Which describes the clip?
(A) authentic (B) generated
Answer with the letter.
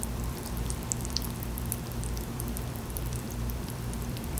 B